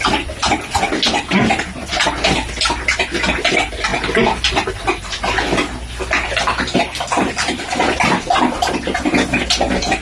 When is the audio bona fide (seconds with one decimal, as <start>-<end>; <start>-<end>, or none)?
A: 0.0-10.0